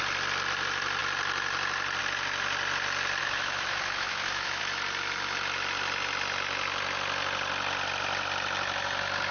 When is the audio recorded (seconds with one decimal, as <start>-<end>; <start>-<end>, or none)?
0.0-3.2; 4.6-9.3